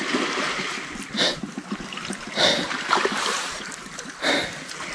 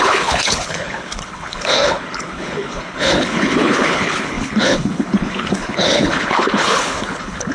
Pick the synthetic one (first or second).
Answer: second